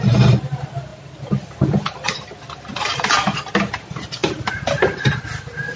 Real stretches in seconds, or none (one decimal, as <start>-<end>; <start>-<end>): 0.0-5.8